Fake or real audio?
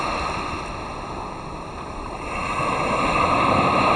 real